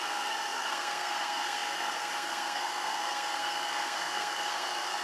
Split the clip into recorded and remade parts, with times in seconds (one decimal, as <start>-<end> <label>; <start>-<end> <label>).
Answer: 0.0-5.0 remade